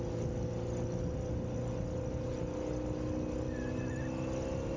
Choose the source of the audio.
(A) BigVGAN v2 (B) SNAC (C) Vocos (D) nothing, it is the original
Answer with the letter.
D